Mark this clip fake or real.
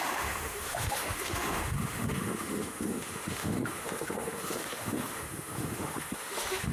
fake